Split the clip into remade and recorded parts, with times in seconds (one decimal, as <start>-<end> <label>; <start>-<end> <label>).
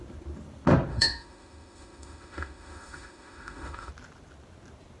0.0-0.9 recorded; 0.9-3.9 remade; 3.9-5.0 recorded